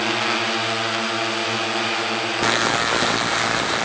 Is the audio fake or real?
real